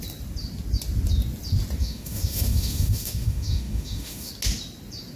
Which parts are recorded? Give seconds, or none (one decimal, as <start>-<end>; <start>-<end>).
0.0-1.8; 4.3-5.2